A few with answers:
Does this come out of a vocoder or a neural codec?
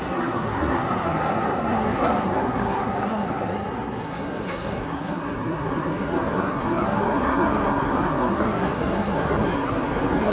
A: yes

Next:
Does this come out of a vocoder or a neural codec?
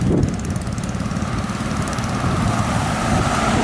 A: no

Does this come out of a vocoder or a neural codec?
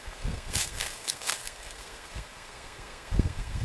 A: yes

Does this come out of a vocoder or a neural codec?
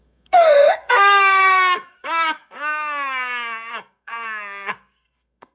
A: yes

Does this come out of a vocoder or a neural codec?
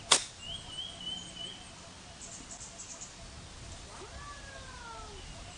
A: no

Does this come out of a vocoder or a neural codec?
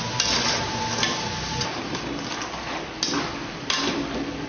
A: no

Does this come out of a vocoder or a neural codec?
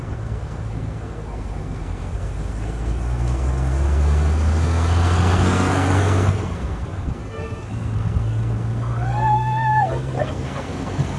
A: yes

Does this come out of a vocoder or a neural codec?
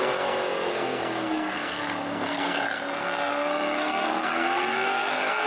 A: yes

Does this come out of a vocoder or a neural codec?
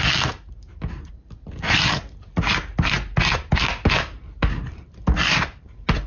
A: no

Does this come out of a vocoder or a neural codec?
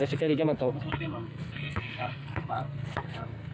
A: yes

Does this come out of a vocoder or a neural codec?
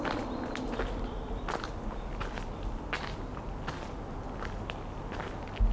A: no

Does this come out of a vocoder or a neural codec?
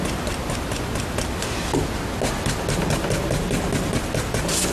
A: no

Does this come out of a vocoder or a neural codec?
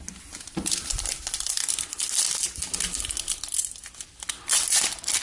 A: no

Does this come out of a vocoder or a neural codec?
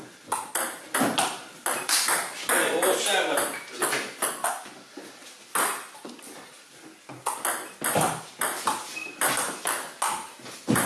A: no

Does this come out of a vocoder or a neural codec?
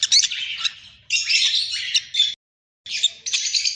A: no